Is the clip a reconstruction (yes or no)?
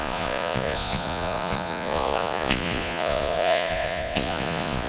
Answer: yes